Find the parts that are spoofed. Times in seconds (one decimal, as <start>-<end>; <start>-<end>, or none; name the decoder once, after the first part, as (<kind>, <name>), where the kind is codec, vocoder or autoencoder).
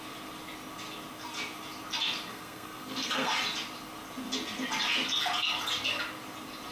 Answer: 2.3-3.3 (codec, SNAC)